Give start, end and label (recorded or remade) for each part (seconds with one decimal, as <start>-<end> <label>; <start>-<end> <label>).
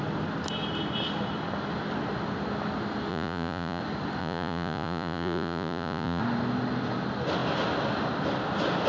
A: 0.0-3.1 recorded; 3.1-3.8 remade; 3.8-4.2 recorded; 4.2-6.2 remade; 6.2-8.9 recorded